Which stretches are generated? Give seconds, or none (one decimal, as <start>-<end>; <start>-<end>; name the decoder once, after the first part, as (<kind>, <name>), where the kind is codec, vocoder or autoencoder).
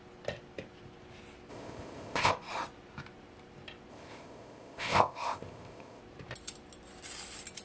1.5-2.3 (codec, ZipCodec); 3.9-6.0